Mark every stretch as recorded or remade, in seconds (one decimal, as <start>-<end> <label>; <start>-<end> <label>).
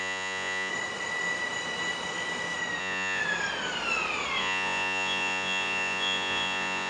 0.0-0.7 remade; 0.7-2.8 recorded; 2.8-3.2 remade; 3.2-4.4 recorded; 4.4-6.9 remade